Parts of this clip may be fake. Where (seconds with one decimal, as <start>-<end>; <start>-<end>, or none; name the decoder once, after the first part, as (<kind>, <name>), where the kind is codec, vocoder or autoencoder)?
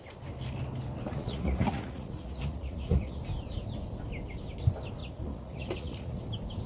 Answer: 1.1-3.2 (vocoder, Vocos); 5.0-6.2